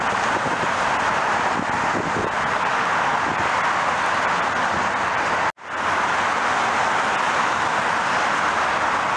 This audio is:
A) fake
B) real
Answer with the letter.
B